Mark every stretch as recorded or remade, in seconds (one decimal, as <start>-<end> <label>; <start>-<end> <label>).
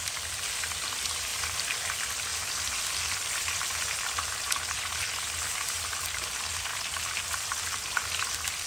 0.0-8.7 recorded